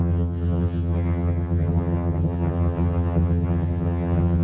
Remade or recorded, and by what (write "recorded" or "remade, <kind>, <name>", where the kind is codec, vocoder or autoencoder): remade, vocoder, HiFi-GAN